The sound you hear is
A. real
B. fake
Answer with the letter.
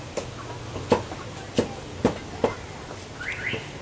A